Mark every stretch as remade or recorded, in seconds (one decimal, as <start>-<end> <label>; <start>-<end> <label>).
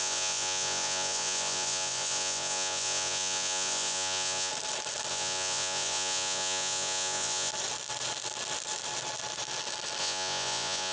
0.0-4.5 remade; 4.5-5.1 recorded; 5.1-7.5 remade; 7.5-10.0 recorded; 10.0-10.9 remade